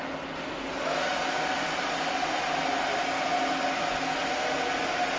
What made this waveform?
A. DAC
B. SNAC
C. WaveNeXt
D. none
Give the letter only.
D